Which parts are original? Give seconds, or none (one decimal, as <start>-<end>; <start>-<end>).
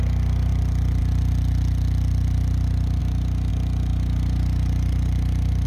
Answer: 0.0-3.0; 3.5-3.9